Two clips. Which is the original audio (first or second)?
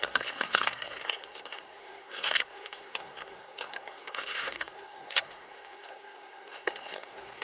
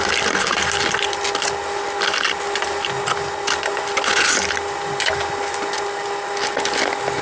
second